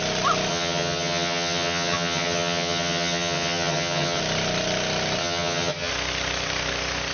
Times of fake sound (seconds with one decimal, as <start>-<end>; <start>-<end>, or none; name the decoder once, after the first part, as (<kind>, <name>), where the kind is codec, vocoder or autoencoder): 0.5-4.2 (vocoder, HiFi-GAN); 5.2-5.9